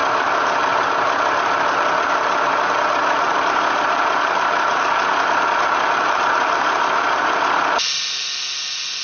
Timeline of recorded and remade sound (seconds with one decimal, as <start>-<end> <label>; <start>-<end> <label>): 0.0-9.0 recorded